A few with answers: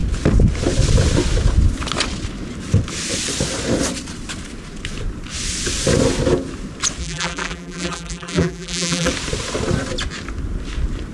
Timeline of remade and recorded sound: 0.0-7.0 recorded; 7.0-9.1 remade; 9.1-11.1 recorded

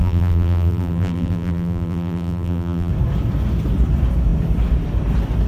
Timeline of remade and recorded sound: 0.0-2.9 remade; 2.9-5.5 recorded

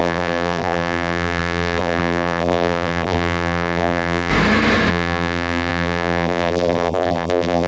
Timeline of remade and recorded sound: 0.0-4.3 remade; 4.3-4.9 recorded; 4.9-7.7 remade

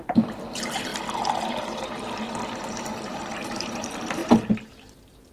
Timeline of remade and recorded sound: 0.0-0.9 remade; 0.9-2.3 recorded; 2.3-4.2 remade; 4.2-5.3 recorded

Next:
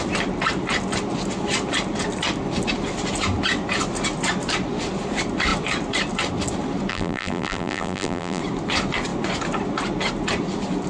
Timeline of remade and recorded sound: 0.0-6.9 recorded; 6.9-8.4 remade; 8.4-10.9 recorded

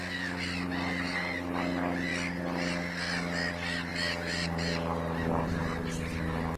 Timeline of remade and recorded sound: 0.0-3.9 recorded; 3.9-5.6 remade; 5.6-6.6 recorded

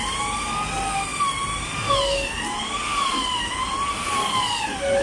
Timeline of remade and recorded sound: 0.0-5.0 recorded